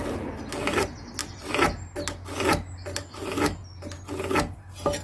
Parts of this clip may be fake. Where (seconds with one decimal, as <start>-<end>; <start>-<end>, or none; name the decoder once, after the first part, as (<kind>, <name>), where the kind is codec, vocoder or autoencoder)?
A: none